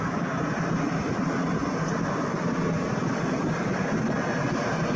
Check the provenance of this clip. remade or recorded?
recorded